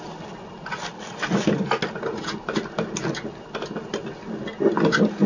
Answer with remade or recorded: recorded